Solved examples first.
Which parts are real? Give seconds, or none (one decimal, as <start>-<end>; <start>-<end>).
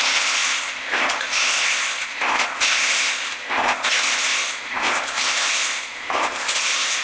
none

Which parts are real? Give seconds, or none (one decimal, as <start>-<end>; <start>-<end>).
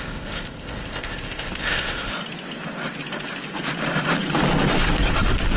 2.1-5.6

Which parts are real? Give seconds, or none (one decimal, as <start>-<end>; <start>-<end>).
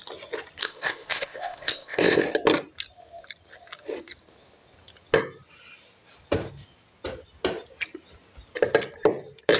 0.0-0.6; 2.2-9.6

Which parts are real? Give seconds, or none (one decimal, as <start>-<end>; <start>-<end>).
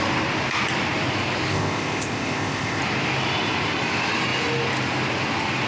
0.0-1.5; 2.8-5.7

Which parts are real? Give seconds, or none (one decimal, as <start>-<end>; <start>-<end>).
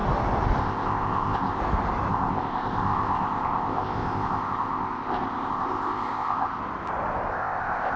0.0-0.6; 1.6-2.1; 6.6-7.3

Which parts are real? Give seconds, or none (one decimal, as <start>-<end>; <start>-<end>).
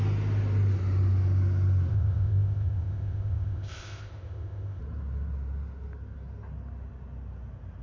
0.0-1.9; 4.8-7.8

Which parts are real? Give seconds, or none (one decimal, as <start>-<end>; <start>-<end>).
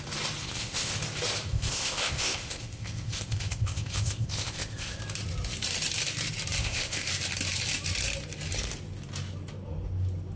0.0-0.4; 0.9-1.5; 5.0-6.6; 7.1-10.4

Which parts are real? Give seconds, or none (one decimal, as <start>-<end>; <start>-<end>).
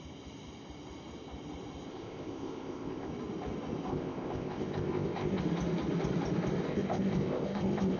0.0-1.9; 3.1-3.9; 5.4-6.7